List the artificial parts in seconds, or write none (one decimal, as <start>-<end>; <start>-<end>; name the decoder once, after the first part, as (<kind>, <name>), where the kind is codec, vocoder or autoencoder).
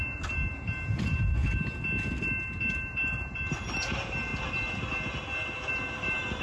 0.0-1.4 (vocoder, BigVGAN v2); 2.7-4.3; 5.7-6.4